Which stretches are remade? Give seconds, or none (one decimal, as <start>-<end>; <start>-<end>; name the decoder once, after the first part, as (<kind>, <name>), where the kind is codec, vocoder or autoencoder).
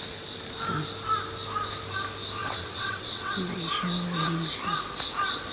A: 2.4-3.3 (vocoder, WaveNeXt)